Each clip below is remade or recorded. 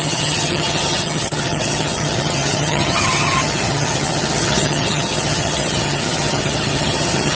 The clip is remade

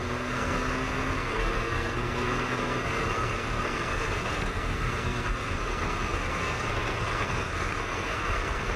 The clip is remade